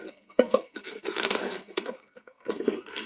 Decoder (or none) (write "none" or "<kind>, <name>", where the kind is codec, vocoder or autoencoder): codec, SNAC